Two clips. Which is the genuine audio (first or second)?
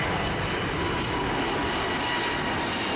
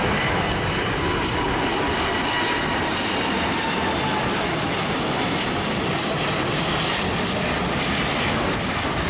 first